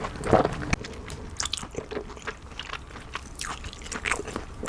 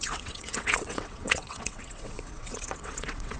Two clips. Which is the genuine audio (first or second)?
first